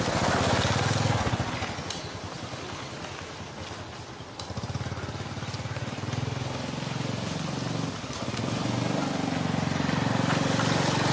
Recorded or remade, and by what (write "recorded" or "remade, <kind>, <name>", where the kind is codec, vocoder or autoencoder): recorded